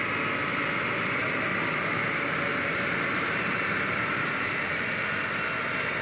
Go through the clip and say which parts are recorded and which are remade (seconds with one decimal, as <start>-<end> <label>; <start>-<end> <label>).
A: 0.0-2.5 recorded; 2.5-4.8 remade; 4.8-6.0 recorded